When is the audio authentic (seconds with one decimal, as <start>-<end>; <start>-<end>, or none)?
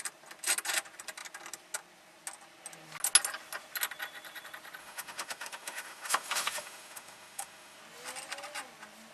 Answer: 0.0-4.8; 7.8-9.1